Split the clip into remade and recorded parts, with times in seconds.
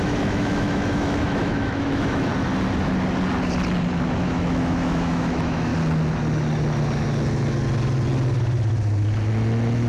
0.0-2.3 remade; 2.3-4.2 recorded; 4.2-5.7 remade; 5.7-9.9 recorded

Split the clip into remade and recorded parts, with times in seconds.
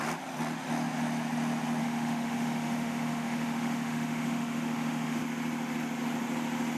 0.0-1.8 recorded; 1.8-5.2 remade; 5.2-6.8 recorded